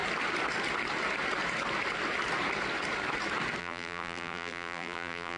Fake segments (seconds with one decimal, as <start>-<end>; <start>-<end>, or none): 3.6-5.4